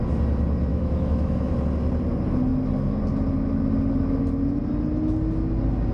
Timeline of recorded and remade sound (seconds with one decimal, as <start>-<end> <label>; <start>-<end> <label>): 0.0-0.7 recorded; 0.7-1.5 remade; 1.5-5.9 recorded